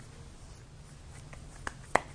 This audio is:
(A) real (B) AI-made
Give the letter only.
A